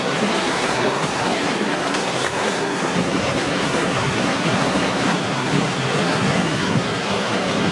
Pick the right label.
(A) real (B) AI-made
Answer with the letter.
B